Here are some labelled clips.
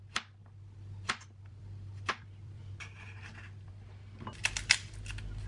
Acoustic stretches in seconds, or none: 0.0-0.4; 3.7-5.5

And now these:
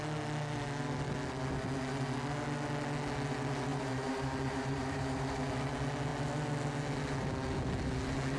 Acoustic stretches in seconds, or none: 0.0-3.7; 5.4-8.4

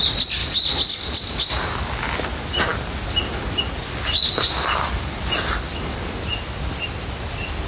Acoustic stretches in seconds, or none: 0.0-7.7